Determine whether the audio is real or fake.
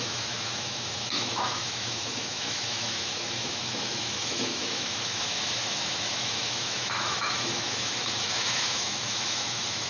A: fake